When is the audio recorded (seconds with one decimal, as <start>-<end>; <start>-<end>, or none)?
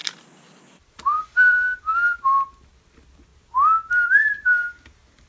1.8-5.3